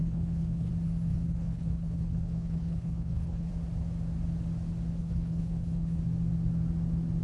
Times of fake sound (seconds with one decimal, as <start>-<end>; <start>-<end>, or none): 0.0-0.7; 1.1-3.5; 5.0-6.0